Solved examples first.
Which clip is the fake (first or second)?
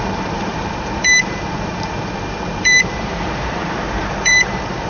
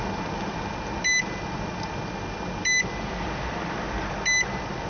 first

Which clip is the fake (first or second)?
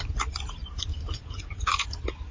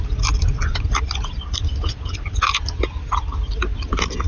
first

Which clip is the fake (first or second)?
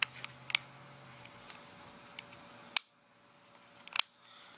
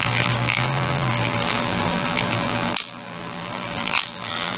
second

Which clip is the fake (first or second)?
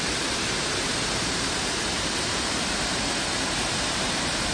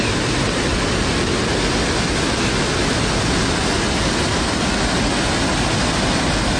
first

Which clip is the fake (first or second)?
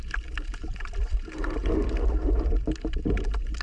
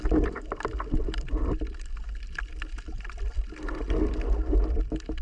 first